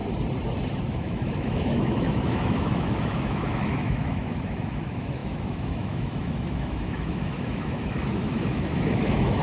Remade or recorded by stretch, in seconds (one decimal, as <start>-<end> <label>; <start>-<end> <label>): 0.0-0.9 recorded; 0.9-9.4 remade